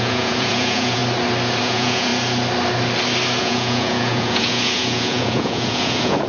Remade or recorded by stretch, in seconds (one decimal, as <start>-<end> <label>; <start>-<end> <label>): 0.0-1.0 remade; 1.0-1.6 recorded; 1.6-2.1 remade; 2.1-3.4 recorded; 3.4-6.3 remade